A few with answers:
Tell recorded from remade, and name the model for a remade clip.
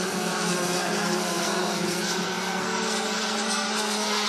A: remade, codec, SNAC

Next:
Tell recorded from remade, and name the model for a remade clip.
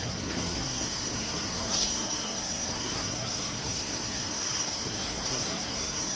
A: remade, codec, SNAC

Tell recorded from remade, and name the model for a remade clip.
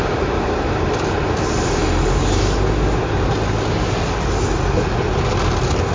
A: recorded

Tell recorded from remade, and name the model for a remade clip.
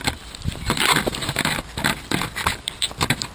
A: recorded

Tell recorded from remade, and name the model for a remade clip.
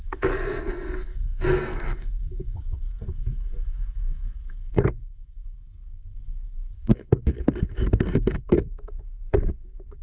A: remade, codec, SNAC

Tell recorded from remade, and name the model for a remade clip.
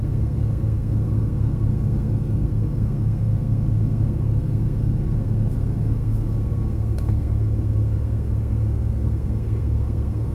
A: remade, codec, SNAC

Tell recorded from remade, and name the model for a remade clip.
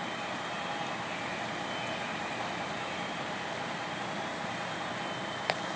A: recorded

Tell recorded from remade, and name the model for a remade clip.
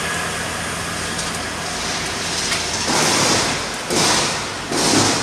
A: recorded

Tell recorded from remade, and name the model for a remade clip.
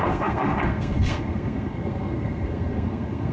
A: remade, codec, SNAC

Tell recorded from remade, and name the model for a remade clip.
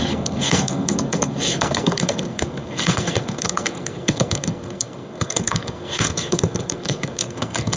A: remade, codec, SNAC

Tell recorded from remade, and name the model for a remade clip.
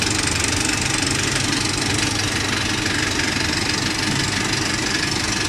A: recorded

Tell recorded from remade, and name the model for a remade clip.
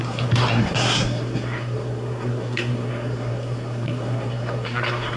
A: remade, codec, SNAC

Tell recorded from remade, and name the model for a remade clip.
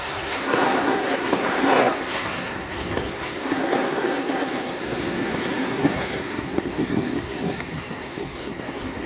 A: remade, codec, SNAC